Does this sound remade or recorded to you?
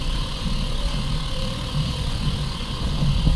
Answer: remade